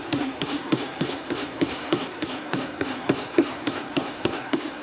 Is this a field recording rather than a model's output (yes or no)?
no